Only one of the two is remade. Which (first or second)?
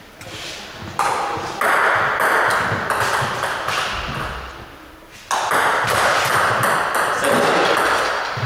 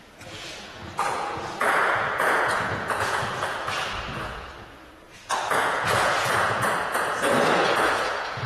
second